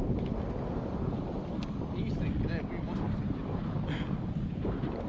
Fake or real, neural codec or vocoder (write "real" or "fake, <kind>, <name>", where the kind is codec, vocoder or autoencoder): real